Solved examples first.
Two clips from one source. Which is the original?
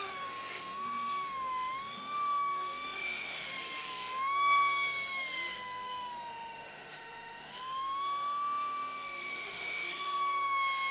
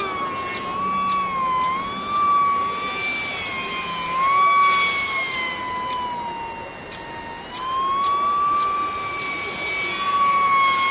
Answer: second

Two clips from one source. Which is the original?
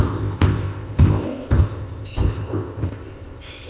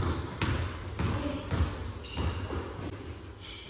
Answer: second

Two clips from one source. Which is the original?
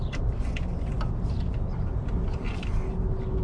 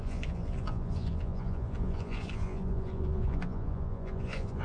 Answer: first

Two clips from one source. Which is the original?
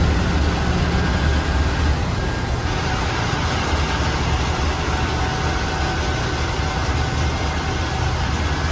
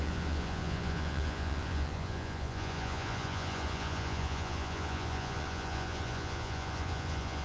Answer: first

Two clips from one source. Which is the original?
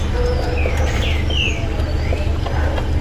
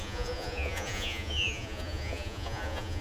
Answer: first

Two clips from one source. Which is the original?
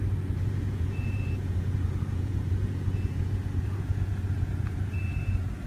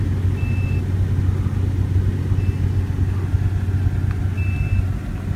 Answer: second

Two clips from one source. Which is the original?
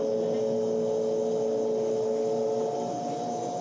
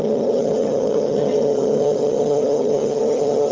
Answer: first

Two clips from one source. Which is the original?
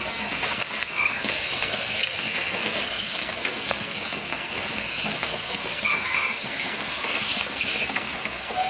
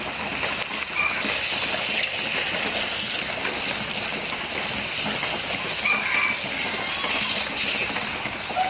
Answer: second